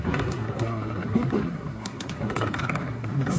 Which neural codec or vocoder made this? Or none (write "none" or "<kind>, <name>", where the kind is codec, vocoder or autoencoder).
codec, SNAC